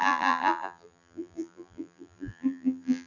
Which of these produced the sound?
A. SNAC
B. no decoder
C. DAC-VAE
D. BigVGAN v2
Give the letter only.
D